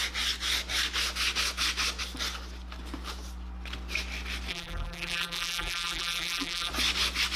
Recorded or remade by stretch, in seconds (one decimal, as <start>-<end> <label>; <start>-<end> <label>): 0.0-4.5 recorded; 4.5-6.7 remade; 6.7-7.4 recorded